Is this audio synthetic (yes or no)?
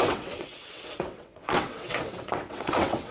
yes